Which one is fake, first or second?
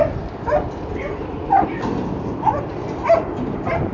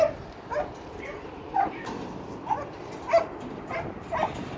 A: second